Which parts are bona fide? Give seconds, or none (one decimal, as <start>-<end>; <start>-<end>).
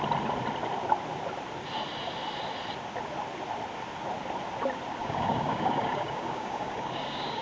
0.0-5.0